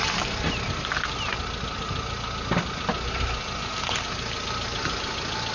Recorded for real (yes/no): yes